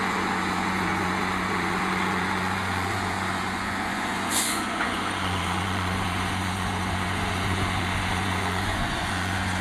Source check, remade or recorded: remade